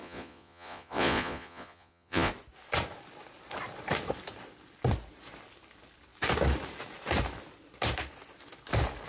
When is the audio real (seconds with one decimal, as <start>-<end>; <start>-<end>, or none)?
2.3-9.1

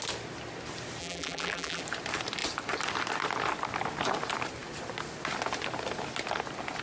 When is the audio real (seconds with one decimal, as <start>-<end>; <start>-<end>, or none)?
0.0-1.0; 1.8-6.8

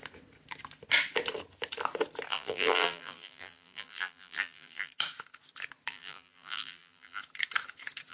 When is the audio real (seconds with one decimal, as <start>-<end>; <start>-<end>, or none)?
0.0-2.3; 4.9-5.9; 7.2-8.1

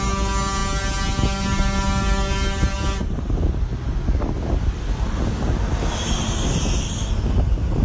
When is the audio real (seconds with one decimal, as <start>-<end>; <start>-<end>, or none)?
0.0-7.8

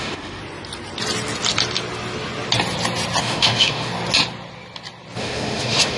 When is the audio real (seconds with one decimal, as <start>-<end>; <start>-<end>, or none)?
0.4-3.2; 3.9-5.2

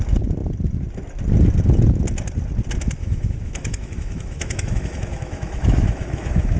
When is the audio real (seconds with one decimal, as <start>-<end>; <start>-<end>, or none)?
0.0-3.0

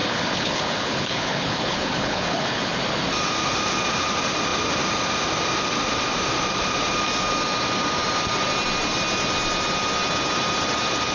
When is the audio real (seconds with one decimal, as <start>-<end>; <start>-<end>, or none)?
2.8-11.1

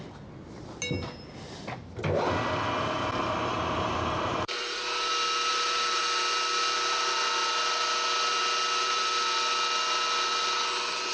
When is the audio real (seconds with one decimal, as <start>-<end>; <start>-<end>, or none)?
0.0-3.5; 5.1-5.5; 6.0-11.1